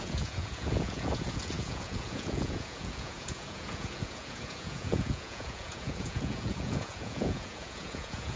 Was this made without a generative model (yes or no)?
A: no